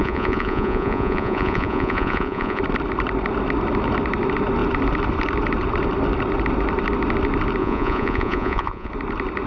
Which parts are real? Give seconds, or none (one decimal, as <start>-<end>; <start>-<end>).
2.6-7.6; 8.9-9.5